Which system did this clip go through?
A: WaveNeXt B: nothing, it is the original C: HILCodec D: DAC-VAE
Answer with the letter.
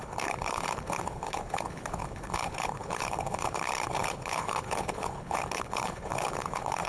C